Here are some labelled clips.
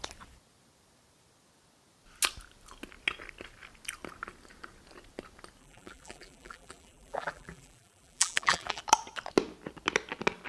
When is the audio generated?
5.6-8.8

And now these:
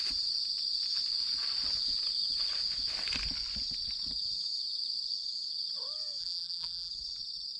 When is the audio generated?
6.2-6.9